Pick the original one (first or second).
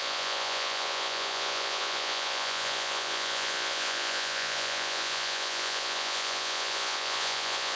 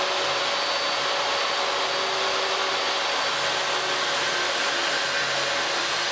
second